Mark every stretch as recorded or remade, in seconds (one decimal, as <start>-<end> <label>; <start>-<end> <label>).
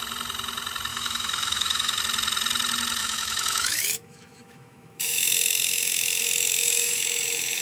0.0-0.9 recorded; 0.9-2.0 remade; 2.0-3.0 recorded; 3.0-7.6 remade